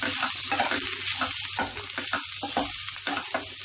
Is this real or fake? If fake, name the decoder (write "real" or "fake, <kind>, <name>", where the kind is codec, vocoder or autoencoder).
real